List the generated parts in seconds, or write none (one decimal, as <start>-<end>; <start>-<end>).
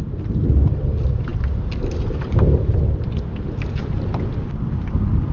none